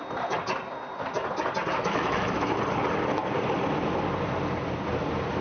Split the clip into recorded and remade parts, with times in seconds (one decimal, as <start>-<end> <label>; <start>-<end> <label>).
0.0-1.7 recorded; 1.7-2.6 remade; 2.6-5.4 recorded